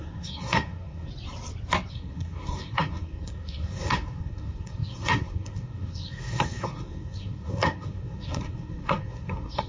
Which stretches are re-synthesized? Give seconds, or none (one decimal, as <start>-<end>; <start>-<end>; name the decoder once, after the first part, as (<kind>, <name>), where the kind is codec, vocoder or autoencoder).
0.0-1.1 (codec, SNAC); 1.9-9.7